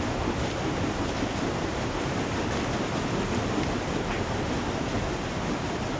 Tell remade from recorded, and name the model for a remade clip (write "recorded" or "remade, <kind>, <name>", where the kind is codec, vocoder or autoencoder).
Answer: recorded